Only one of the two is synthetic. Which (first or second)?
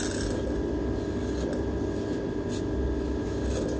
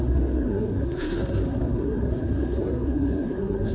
second